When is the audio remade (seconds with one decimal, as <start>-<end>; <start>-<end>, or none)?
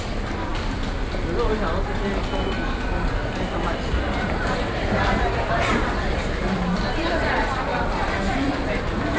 5.7-7.0; 7.7-9.2